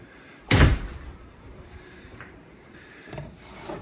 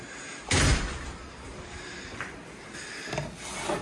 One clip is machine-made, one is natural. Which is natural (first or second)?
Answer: second